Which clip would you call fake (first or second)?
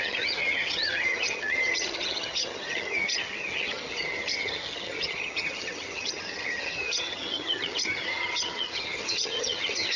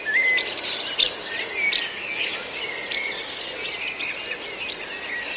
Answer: first